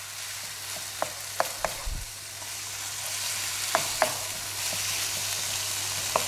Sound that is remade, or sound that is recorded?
recorded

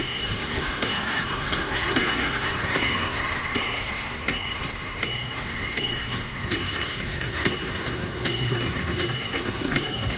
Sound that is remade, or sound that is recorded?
remade